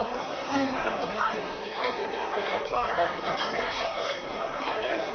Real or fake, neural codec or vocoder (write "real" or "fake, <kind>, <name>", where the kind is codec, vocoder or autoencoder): fake, codec, SNAC